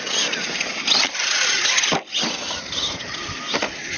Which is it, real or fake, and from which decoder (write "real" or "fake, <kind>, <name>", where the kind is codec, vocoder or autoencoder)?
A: real